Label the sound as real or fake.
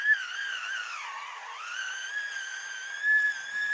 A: real